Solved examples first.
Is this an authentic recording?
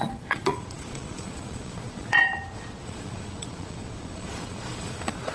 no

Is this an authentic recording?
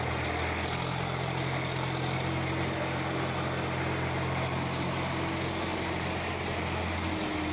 yes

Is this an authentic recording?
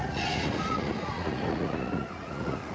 no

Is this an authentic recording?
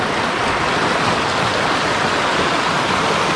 yes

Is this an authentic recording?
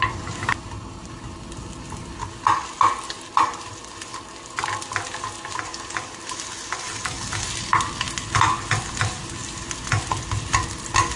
yes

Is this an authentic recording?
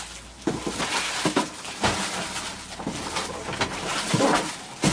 yes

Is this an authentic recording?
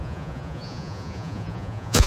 no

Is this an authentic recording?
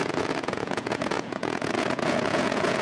no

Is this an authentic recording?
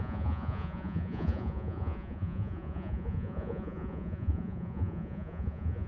no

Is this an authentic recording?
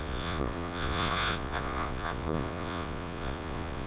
no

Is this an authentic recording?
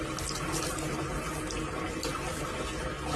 yes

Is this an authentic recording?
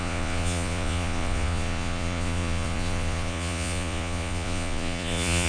no